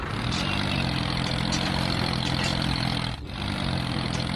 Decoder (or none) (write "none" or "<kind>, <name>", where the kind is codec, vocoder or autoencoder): vocoder, BigVGAN v2